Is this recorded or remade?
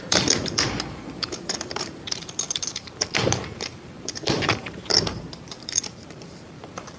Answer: remade